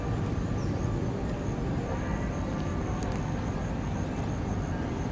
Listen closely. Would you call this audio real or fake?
real